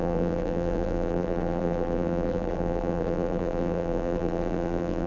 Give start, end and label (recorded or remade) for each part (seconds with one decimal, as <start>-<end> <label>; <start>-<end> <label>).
0.0-5.1 remade